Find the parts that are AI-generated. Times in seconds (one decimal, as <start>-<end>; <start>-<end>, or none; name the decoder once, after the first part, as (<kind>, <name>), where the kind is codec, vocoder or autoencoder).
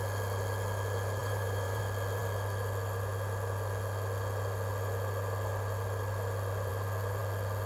1.2-1.8 (vocoder, BigVGAN v2)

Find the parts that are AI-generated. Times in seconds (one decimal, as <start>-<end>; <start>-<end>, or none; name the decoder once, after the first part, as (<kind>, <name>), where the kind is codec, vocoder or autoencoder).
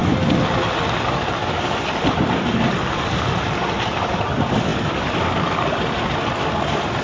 0.0-4.2 (vocoder, BigVGAN v2); 4.7-6.5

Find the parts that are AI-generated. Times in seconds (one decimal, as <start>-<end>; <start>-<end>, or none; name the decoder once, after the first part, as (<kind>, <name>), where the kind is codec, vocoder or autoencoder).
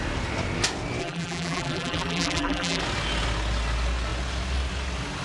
1.0-2.8 (vocoder, BigVGAN v2)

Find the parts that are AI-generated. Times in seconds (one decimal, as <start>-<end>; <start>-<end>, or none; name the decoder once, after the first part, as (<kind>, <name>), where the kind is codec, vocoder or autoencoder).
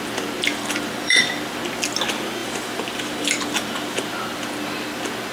0.5-1.2 (vocoder, BigVGAN v2); 2.4-4.0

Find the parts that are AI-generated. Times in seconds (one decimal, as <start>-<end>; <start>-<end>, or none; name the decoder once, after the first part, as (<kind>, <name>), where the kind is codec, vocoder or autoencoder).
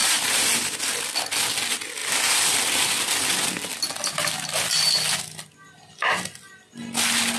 0.0-0.8 (vocoder, BigVGAN v2)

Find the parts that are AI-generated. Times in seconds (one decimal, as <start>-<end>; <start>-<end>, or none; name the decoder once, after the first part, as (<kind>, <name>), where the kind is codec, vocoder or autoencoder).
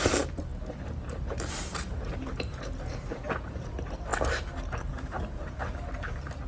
0.0-0.5 (vocoder, BigVGAN v2); 1.5-4.1; 4.9-6.5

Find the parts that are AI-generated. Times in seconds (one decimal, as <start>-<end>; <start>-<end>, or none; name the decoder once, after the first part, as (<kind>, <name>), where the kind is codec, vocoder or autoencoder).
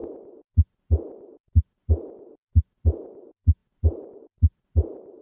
2.8-5.2 (vocoder, BigVGAN v2)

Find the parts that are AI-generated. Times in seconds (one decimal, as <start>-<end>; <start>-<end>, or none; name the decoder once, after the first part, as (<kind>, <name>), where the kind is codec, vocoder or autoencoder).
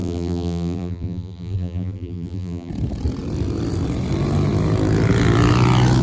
0.0-2.7 (vocoder, BigVGAN v2)